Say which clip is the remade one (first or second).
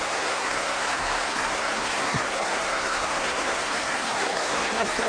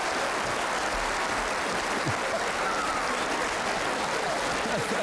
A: first